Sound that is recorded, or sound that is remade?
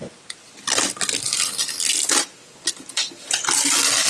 recorded